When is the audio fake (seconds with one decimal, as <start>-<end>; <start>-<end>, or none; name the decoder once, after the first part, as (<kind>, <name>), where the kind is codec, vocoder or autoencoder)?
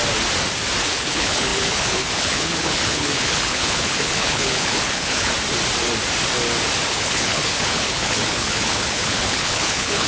0.9-5.3 (codec, HILCodec); 6.9-10.1